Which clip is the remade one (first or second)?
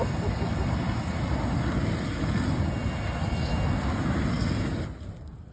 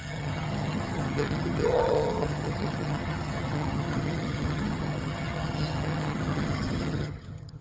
second